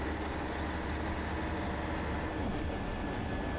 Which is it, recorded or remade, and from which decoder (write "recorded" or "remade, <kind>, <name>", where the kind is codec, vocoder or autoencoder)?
recorded